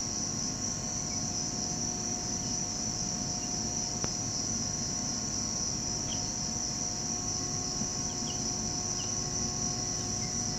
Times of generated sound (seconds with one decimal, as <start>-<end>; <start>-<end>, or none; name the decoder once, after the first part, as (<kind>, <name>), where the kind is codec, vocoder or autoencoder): none